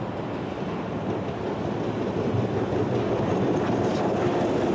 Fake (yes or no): no